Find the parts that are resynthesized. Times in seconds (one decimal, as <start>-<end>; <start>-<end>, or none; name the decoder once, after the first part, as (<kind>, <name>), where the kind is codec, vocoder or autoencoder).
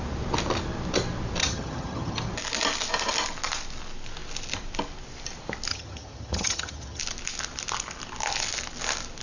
1.4-2.3 (vocoder, HiFi-GAN); 5.7-7.0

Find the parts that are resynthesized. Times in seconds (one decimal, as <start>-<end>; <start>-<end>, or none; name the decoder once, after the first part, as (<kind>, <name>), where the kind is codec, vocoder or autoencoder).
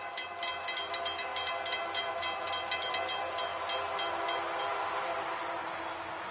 none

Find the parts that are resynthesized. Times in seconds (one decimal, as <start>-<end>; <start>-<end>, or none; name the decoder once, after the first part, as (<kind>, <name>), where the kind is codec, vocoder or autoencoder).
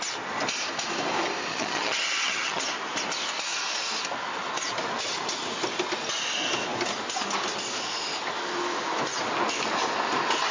1.5-2.6 (vocoder, HiFi-GAN)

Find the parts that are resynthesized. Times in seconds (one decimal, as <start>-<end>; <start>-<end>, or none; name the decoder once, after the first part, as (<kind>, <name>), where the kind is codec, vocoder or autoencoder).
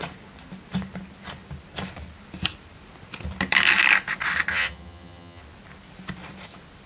4.5-5.4 (vocoder, HiFi-GAN)